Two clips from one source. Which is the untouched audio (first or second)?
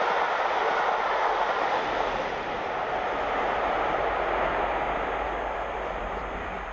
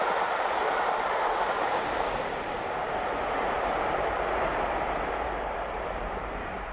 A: first